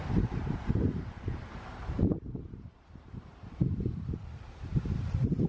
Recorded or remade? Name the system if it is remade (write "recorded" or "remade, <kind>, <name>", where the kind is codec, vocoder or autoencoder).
remade, vocoder, BigVGAN v2